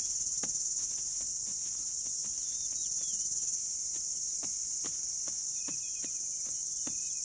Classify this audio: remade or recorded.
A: remade